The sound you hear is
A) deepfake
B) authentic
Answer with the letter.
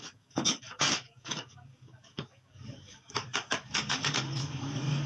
A